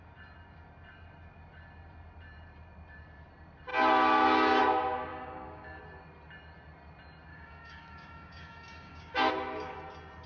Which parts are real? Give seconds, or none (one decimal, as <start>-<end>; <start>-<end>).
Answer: 0.0-5.1; 5.8-7.3; 9.3-10.3